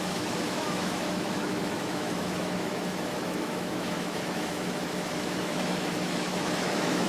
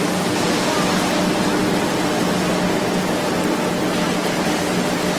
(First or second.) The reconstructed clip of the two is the first